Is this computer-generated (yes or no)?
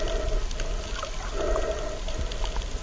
no